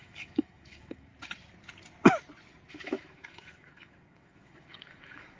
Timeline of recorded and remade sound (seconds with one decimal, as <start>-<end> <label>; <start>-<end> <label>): 0.0-1.1 remade; 1.1-2.7 recorded; 2.7-5.4 remade